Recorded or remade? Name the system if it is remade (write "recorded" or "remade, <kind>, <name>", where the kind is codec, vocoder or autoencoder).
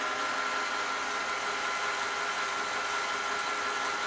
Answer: recorded